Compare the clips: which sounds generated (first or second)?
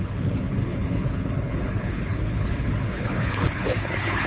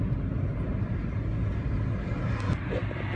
first